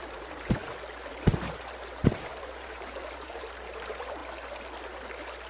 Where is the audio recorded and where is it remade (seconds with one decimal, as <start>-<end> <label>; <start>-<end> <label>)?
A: 0.0-0.6 remade; 0.6-1.1 recorded; 1.1-4.2 remade; 4.2-5.5 recorded